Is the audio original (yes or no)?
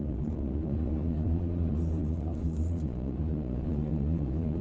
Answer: no